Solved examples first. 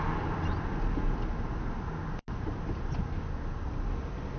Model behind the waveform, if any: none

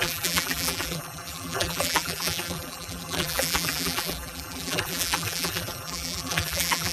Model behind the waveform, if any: vocoder, BigVGAN v2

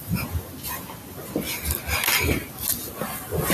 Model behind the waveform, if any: none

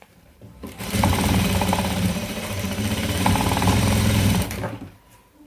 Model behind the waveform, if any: vocoder, BigVGAN v2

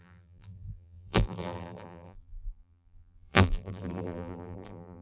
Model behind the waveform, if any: vocoder, BigVGAN v2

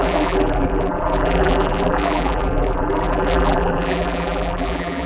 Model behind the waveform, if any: vocoder, BigVGAN v2